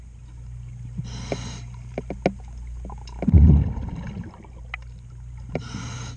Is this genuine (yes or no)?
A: yes